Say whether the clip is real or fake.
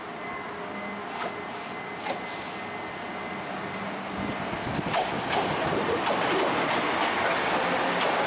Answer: real